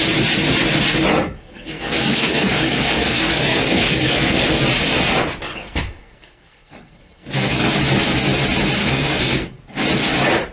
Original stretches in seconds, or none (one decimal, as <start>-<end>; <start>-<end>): 0.0-1.1; 4.6-5.5; 7.7-8.8; 9.6-10.5